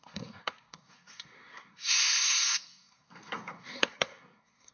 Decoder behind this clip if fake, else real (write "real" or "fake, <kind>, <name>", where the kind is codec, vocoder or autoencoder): fake, codec, SNAC